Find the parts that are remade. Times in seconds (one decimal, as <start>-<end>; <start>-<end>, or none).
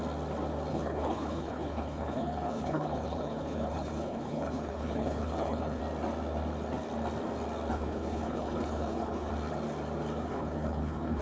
0.7-5.8; 7.7-9.3; 10.3-11.2